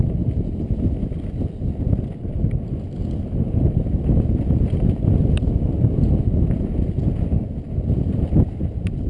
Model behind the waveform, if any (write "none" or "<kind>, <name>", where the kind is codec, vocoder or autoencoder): none